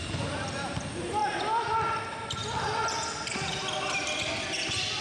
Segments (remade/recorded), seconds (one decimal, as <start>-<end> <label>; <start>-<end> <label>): 0.0-5.0 recorded

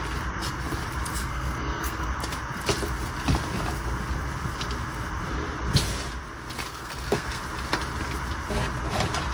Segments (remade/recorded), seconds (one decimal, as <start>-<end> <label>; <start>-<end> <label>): 0.0-1.2 recorded; 1.2-2.1 remade; 2.1-6.7 recorded; 6.7-7.4 remade; 7.4-9.3 recorded